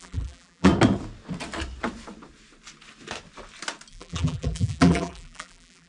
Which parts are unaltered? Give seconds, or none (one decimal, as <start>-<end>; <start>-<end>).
0.7-3.9